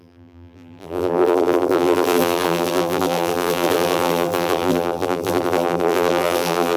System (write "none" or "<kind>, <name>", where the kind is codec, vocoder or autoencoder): vocoder, BigVGAN v2